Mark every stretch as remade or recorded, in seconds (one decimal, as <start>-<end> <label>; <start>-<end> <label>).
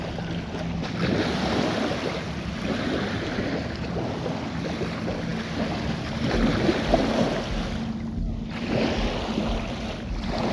0.0-10.5 recorded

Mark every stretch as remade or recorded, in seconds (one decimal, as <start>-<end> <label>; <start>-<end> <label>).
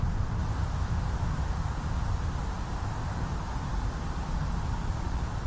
0.0-4.8 recorded; 4.8-5.5 remade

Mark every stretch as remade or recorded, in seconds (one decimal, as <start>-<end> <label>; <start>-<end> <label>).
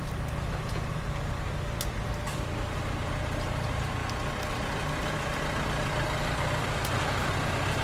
0.0-7.8 recorded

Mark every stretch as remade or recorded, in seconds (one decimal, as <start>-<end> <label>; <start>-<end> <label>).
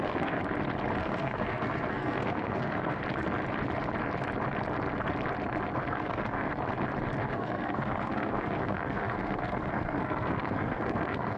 0.0-0.4 remade; 0.4-1.0 recorded; 1.0-3.0 remade; 3.0-5.8 recorded; 5.8-6.5 remade; 6.5-7.2 recorded; 7.2-11.4 remade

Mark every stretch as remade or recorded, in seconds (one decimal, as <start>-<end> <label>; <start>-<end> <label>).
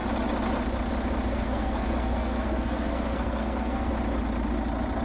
0.0-1.3 recorded; 1.3-3.9 remade; 3.9-5.0 recorded